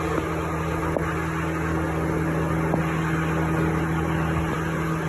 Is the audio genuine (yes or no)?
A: yes